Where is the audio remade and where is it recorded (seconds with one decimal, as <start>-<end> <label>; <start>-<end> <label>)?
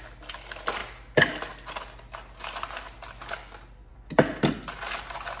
0.0-3.9 recorded; 3.9-4.6 remade; 4.6-5.4 recorded